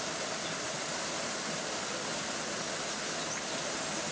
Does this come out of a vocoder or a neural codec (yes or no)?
no